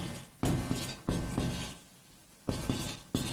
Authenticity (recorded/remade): recorded